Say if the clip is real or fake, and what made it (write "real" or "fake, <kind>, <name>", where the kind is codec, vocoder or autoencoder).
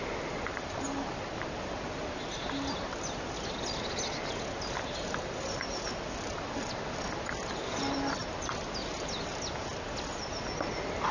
real